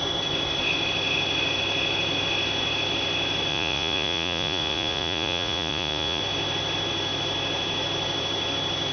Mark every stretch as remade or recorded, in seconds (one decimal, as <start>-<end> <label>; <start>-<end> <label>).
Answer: 0.0-3.5 recorded; 3.5-6.2 remade; 6.2-8.9 recorded